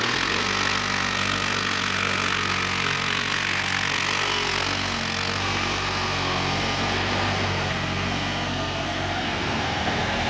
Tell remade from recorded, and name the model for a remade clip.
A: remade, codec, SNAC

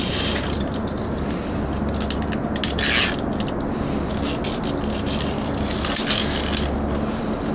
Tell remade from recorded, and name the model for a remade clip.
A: recorded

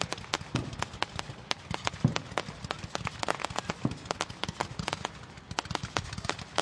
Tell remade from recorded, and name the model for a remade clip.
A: recorded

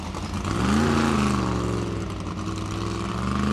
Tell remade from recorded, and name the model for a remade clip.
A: recorded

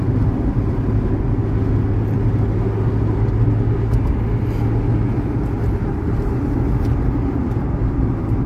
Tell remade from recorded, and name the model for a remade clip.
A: recorded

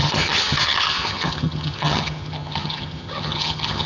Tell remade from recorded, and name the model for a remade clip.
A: remade, vocoder, HiFi-GAN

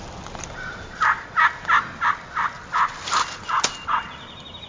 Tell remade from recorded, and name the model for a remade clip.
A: recorded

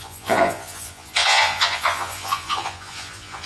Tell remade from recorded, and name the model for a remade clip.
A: remade, vocoder, Vocos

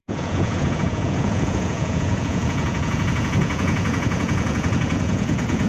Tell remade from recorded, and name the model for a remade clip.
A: remade, vocoder, Vocos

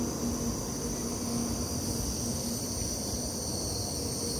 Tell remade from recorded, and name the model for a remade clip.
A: recorded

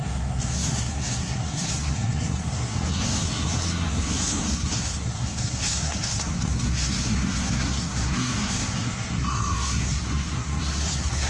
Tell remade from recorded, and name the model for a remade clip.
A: remade, codec, SNAC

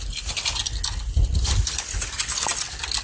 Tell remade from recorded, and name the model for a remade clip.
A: recorded